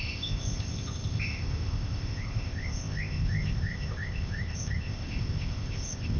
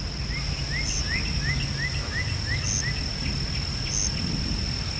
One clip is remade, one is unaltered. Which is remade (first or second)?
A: first